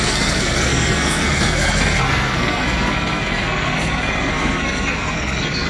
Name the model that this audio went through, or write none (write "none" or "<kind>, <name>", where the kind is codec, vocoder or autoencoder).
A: codec, SNAC